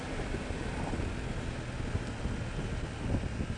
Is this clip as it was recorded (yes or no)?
yes